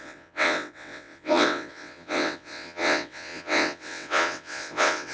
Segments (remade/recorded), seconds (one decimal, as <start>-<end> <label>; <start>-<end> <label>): 0.0-5.1 remade